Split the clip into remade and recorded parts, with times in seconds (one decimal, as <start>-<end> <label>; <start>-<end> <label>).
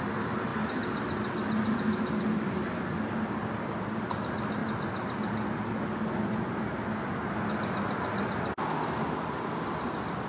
0.0-10.3 recorded